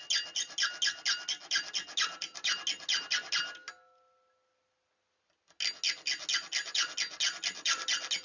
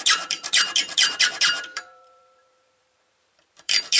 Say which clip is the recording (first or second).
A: first